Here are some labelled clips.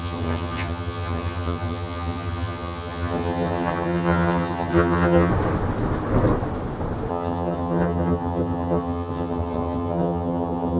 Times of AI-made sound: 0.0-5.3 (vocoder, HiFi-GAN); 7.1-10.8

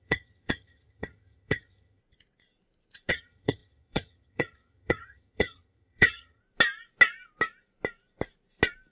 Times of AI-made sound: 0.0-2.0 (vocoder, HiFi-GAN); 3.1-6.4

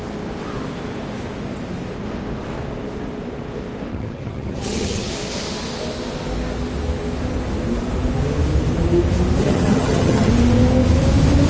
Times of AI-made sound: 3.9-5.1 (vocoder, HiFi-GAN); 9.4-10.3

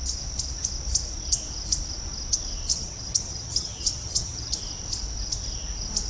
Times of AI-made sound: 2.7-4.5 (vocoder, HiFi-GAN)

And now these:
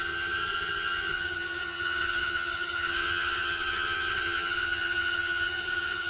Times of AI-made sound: 0.0-6.1 (vocoder, HiFi-GAN)